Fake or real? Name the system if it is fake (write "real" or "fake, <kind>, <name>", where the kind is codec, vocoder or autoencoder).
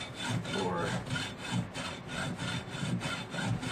real